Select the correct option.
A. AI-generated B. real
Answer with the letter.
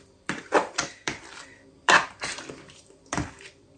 A